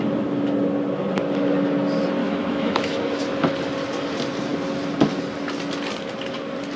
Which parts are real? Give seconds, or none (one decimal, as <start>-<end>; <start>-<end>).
0.0-2.2; 3.0-6.8